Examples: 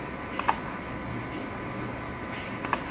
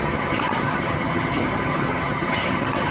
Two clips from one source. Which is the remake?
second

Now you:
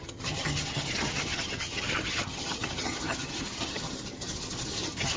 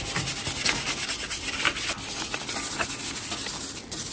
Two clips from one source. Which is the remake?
first